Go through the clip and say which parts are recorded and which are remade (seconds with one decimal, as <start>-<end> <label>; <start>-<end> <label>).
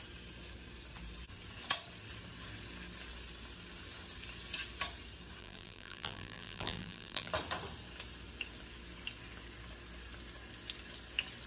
0.0-5.4 recorded; 5.4-7.3 remade; 7.3-11.5 recorded